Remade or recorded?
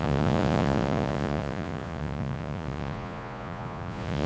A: remade